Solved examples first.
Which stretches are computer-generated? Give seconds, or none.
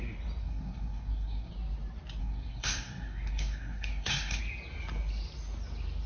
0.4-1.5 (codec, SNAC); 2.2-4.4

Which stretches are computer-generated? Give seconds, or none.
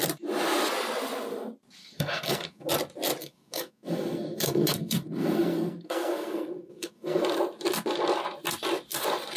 1.8-2.7 (codec, SNAC); 3.2-7.2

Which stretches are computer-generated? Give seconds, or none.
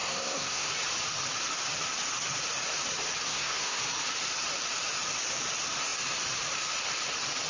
0.0-0.7 (codec, SNAC); 3.3-3.8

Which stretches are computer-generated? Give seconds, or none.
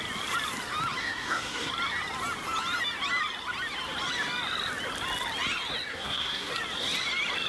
1.0-1.7 (codec, SNAC); 5.9-6.5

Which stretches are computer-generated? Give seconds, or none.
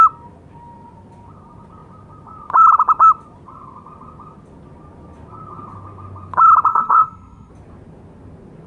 6.7-7.5 (codec, SNAC)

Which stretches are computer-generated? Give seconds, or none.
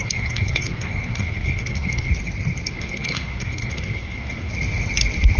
0.0-2.1 (codec, SNAC); 2.7-4.5